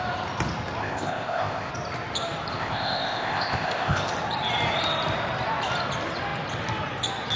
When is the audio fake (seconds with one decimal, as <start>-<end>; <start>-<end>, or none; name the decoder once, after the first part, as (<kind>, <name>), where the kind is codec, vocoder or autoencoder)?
0.8-1.7 (codec, ZipCodec); 2.5-4.1